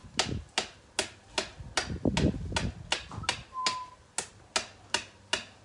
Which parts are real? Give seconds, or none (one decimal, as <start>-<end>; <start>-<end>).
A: 0.0-5.6